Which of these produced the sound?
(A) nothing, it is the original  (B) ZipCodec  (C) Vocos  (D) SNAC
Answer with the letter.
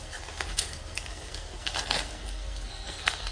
D